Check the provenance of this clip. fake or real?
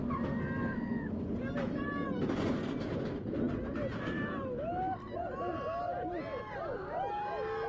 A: real